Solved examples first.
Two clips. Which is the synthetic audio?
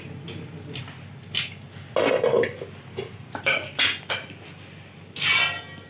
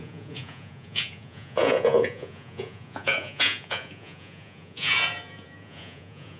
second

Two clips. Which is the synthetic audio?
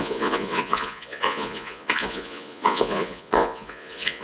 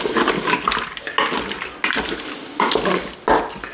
first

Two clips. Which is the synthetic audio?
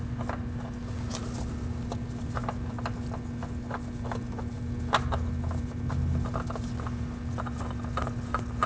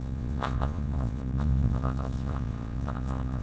second